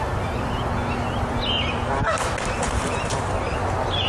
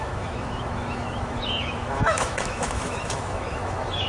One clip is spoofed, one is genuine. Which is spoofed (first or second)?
second